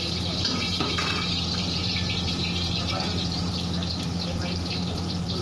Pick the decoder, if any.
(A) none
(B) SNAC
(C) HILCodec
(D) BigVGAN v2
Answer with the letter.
D